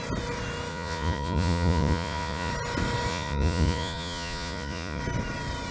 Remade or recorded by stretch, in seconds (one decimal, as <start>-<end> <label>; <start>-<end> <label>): 0.0-0.7 recorded; 0.7-2.5 remade; 2.5-3.1 recorded; 3.1-5.0 remade; 5.0-5.7 recorded